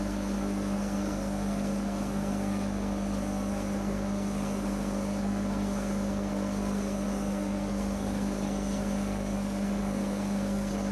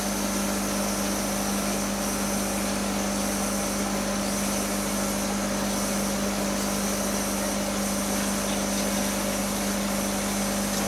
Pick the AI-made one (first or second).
first